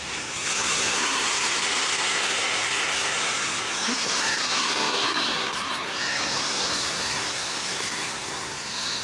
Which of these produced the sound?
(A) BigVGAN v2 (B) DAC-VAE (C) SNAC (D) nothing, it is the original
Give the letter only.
C